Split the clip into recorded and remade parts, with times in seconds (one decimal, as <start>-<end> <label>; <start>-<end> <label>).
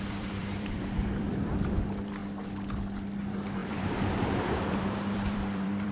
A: 0.0-2.2 remade; 2.2-3.2 recorded; 3.2-5.9 remade